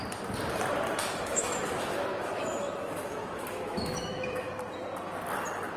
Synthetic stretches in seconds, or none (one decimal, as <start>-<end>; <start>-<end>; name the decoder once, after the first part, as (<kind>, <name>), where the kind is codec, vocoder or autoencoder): 1.0-4.5 (autoencoder, DAC-VAE)